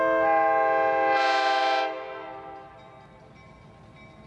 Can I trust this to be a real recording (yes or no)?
yes